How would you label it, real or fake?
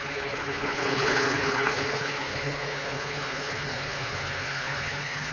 fake